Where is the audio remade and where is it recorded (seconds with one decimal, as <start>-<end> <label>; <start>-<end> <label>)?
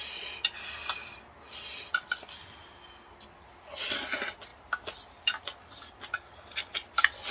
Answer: 0.0-7.3 recorded